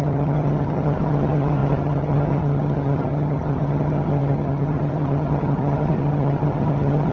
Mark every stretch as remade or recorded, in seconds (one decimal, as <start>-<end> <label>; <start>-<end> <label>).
0.0-7.1 remade